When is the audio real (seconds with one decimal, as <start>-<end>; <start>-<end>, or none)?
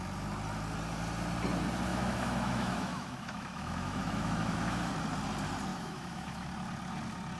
0.0-1.9; 4.9-5.7; 6.5-7.4